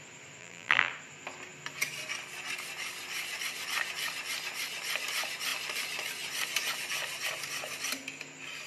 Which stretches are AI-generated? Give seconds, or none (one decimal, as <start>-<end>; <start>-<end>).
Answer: 0.4-0.9

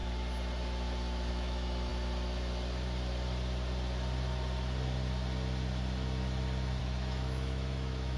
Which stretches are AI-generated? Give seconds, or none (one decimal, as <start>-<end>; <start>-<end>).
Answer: 1.3-1.9; 6.8-8.2

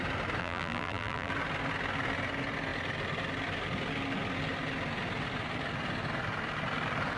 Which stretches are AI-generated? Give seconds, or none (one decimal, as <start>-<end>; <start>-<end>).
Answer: 0.4-1.3

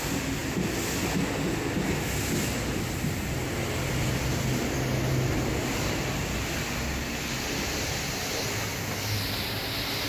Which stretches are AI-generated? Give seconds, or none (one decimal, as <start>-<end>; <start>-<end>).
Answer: none

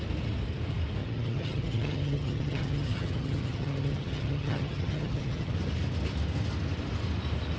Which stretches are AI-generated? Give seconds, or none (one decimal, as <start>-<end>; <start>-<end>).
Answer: 1.0-5.5

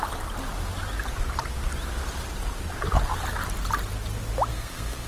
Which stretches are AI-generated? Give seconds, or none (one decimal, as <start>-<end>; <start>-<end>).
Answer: 4.5-5.1